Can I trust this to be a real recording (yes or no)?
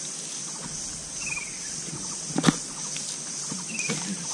yes